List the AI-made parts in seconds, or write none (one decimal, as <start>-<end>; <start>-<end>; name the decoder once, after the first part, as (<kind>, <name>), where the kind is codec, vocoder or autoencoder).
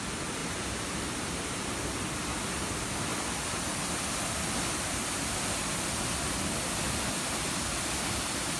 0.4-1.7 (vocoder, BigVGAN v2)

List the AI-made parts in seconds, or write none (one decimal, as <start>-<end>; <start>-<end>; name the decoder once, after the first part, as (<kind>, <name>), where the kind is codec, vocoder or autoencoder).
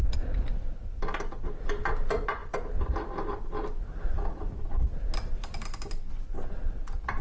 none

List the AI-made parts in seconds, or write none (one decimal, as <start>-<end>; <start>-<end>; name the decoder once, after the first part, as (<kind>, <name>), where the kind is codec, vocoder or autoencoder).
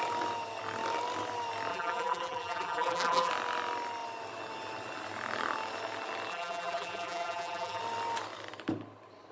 1.7-3.3 (vocoder, BigVGAN v2); 6.3-7.8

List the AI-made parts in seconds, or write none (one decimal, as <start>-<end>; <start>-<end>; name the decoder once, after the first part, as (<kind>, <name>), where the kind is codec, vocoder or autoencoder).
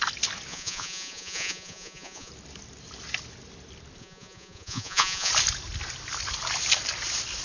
0.5-2.3 (vocoder, Vocos); 4.0-5.3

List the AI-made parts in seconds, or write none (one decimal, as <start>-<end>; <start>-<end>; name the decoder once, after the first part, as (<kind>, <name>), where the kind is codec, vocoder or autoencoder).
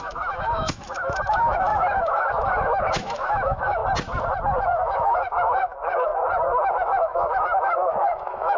0.0-3.8 (autoencoder, DAC-VAE); 4.6-6.1; 6.7-8.6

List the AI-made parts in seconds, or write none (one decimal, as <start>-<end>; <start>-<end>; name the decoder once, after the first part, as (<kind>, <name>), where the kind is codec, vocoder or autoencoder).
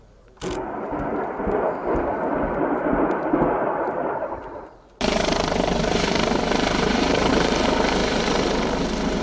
2.9-7.3 (vocoder, BigVGAN v2); 8.0-9.2